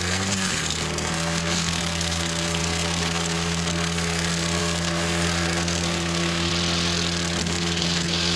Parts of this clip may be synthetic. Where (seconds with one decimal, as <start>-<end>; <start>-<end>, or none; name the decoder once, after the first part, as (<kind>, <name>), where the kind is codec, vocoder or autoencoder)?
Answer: 0.0-6.5 (codec, SNAC); 7.4-8.4

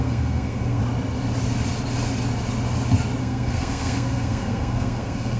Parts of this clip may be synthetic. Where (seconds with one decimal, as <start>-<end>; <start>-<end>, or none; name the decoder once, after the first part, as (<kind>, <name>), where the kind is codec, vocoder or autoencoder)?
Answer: 0.0-0.8 (codec, SNAC); 3.2-5.4

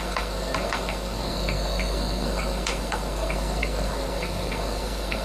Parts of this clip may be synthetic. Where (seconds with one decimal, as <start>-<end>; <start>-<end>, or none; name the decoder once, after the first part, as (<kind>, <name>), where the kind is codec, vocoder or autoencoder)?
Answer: 0.0-5.2 (codec, SNAC)

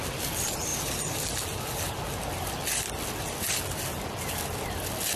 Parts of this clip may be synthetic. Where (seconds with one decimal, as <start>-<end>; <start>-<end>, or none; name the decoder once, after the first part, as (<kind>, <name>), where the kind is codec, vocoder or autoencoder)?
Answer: none